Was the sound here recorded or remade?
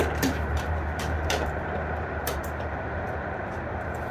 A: remade